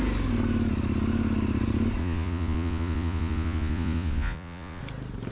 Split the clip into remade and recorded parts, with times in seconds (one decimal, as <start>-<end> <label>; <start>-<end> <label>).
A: 0.0-2.0 recorded; 2.0-4.8 remade; 4.8-5.3 recorded